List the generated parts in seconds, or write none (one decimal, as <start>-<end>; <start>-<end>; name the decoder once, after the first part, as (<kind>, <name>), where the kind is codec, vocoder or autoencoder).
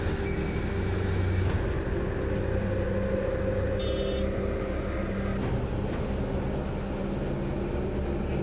none